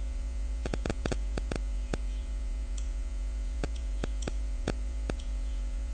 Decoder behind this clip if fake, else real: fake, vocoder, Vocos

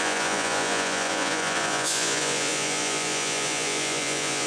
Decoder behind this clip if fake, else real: fake, vocoder, Vocos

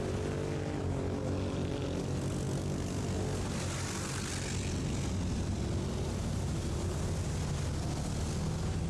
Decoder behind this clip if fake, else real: real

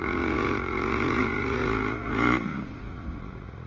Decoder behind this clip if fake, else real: fake, vocoder, Vocos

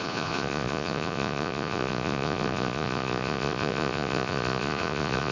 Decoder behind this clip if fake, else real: fake, vocoder, Vocos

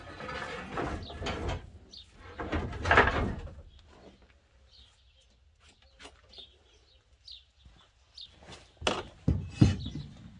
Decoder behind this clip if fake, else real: real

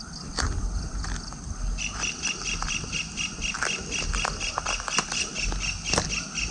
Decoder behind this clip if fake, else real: real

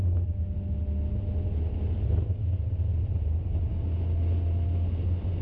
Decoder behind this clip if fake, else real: real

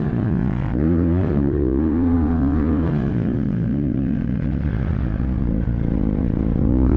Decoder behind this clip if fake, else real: fake, vocoder, Vocos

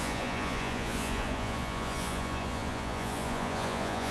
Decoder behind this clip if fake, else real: fake, vocoder, Vocos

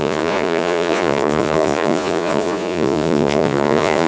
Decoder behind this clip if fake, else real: fake, vocoder, Vocos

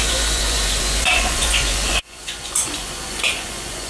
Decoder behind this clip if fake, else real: fake, vocoder, Vocos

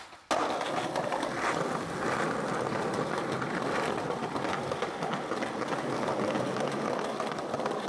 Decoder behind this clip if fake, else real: real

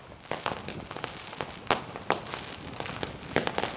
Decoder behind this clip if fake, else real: real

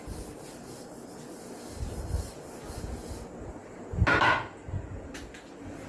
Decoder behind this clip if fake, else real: real